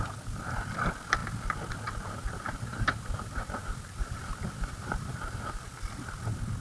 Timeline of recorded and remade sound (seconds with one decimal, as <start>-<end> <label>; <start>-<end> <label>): 0.0-2.7 recorded; 2.7-5.7 remade; 5.7-6.6 recorded